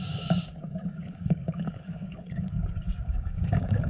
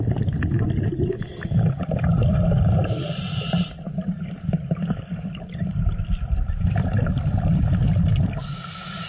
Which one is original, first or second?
second